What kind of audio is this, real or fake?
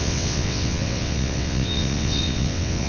fake